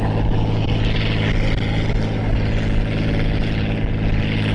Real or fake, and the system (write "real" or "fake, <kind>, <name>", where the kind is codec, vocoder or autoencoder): real